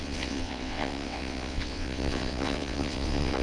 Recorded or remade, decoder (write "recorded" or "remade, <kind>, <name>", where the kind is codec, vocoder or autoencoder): remade, vocoder, WaveNeXt